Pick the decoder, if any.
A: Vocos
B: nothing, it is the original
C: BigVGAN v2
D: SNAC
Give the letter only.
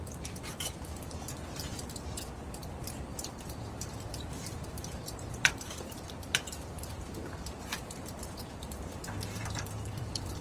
C